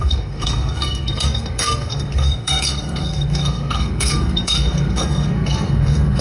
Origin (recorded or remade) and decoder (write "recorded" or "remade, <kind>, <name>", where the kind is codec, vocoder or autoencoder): remade, codec, SNAC